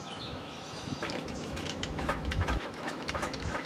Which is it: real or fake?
fake